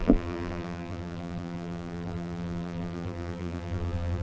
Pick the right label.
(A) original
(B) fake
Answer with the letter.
B